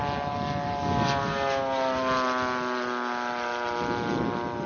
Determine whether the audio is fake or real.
real